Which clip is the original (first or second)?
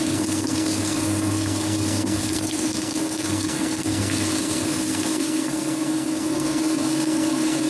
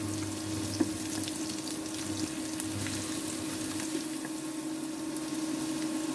second